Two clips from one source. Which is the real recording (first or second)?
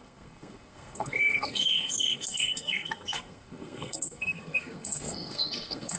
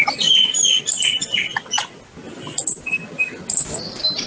second